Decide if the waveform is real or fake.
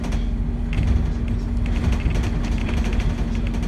real